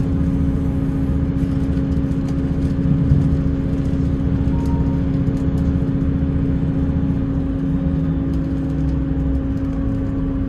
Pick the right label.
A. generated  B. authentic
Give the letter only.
B